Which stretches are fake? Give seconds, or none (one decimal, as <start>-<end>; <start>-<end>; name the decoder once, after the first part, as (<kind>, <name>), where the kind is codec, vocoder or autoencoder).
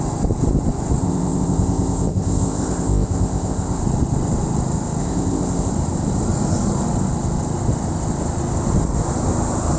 1.0-3.8 (codec, ZipCodec); 5.0-5.7